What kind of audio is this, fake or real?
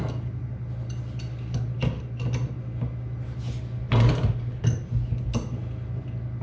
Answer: real